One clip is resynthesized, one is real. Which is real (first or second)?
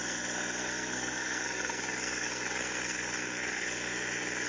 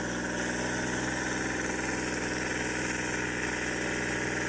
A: second